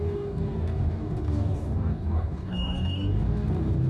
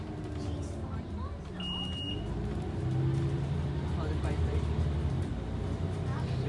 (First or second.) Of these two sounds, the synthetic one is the first